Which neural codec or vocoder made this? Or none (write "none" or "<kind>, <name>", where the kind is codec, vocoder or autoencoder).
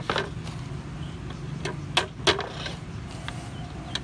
none